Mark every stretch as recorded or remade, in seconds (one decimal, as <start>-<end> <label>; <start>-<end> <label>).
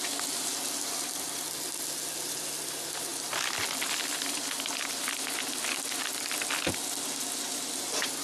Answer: 0.0-8.2 recorded